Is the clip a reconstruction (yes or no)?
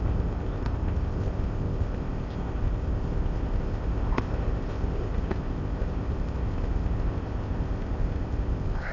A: yes